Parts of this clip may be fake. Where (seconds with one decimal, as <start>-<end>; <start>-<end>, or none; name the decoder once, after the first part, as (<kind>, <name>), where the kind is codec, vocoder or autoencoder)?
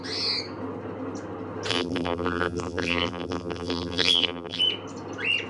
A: 1.7-4.6 (vocoder, BigVGAN v2)